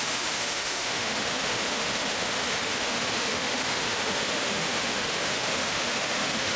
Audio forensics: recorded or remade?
remade